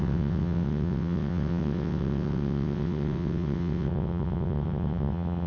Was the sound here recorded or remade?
remade